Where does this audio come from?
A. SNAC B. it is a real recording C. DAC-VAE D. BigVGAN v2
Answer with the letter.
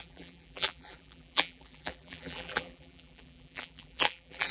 D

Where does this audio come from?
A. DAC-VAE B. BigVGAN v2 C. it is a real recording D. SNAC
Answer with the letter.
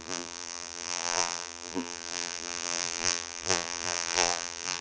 B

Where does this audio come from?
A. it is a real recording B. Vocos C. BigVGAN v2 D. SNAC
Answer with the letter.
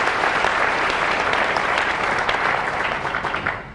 C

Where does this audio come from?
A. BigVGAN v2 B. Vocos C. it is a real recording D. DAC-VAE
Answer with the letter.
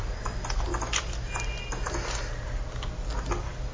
C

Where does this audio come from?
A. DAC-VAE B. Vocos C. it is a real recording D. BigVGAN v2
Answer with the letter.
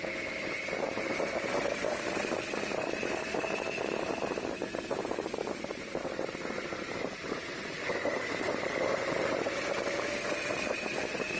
D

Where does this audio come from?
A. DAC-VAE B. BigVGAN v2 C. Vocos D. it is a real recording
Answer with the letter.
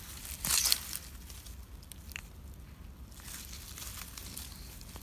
D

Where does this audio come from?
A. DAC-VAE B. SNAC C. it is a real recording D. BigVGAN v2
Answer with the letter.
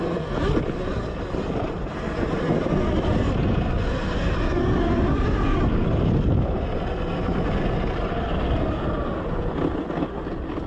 C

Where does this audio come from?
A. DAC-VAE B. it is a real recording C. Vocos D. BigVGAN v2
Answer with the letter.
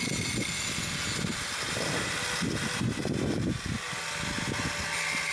B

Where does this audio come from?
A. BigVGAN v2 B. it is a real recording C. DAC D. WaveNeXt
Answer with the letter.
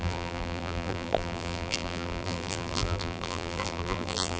A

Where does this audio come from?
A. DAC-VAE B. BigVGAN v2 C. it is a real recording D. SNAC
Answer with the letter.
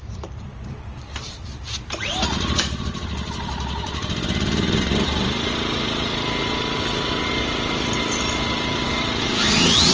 B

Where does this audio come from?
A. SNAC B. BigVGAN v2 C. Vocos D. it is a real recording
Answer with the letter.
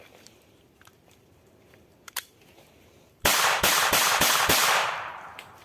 B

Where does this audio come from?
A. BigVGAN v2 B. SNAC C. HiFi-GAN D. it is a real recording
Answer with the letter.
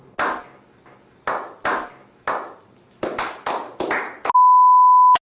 D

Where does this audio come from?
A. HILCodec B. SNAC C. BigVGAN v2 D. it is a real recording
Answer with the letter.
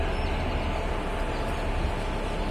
D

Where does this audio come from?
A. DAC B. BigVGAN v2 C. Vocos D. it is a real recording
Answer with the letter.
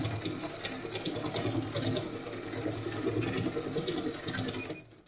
D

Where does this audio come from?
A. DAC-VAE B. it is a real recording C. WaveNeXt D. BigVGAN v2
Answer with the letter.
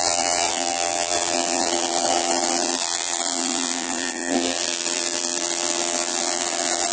D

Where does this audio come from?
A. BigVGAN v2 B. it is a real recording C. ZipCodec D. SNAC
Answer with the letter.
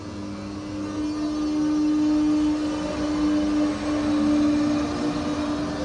B